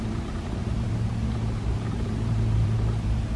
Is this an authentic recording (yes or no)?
no